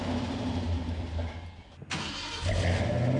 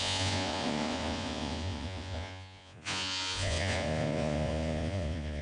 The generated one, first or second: second